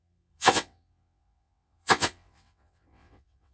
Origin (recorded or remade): remade